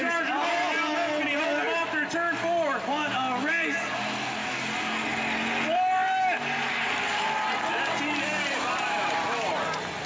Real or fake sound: real